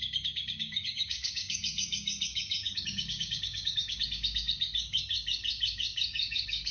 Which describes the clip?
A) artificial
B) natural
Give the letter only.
A